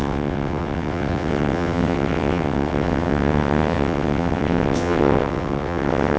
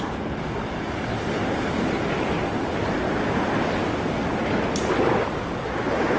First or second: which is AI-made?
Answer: first